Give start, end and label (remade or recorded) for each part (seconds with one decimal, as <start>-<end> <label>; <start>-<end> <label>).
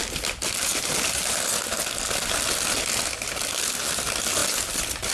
0.0-5.1 recorded